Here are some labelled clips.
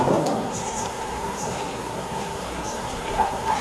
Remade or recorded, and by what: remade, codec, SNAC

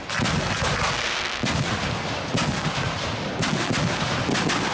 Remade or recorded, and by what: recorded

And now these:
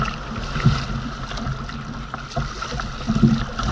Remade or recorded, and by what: recorded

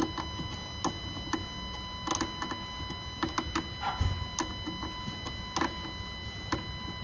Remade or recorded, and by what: recorded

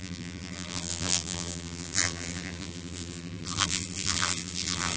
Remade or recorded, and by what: remade, vocoder, BigVGAN v2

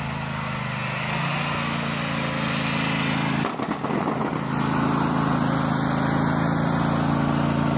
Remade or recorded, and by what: recorded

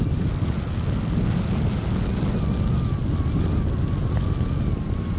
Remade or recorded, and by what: recorded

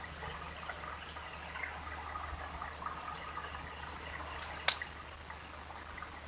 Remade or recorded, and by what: recorded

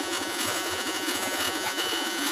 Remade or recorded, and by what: remade, vocoder, Vocos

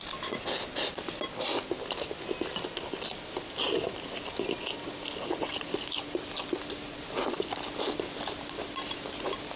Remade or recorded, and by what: recorded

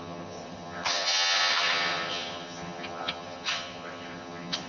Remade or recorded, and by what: remade, vocoder, HiFi-GAN